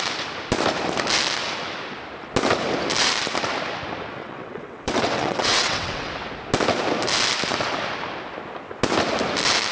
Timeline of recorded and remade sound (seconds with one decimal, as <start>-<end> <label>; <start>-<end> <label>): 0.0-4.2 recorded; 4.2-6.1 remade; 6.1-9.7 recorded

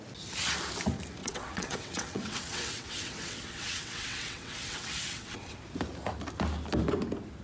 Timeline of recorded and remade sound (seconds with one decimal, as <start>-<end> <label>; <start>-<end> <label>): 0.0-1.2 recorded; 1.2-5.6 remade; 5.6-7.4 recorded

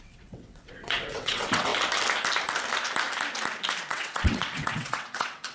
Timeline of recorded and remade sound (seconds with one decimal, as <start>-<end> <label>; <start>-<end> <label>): 0.0-1.7 remade; 1.7-3.9 recorded; 3.9-5.5 remade

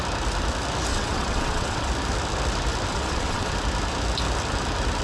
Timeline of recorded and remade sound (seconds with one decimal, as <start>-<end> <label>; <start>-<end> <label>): 0.0-0.9 recorded; 0.9-1.9 remade; 1.9-2.9 recorded; 2.9-3.5 remade; 3.5-5.0 recorded

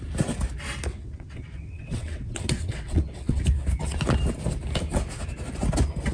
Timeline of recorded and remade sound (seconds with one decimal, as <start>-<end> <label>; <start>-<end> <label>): 0.0-0.9 recorded; 0.9-3.4 remade; 3.4-6.1 recorded

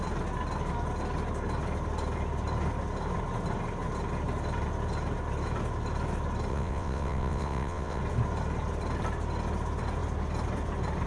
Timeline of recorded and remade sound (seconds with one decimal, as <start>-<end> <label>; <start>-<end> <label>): 0.0-6.5 recorded; 6.5-8.0 remade; 8.0-11.1 recorded